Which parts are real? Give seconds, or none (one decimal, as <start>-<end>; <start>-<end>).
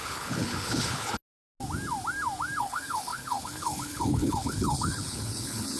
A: 1.2-2.6